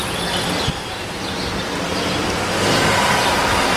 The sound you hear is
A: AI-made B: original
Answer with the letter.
B